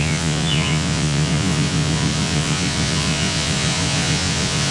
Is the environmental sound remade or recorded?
remade